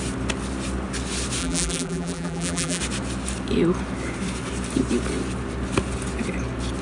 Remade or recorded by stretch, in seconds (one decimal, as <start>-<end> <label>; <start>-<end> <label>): 0.0-1.4 recorded; 1.4-2.8 remade; 2.8-6.8 recorded